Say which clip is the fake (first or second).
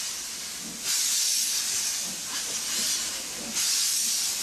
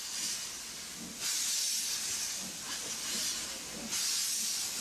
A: first